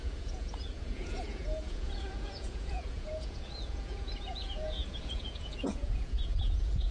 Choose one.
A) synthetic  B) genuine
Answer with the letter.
A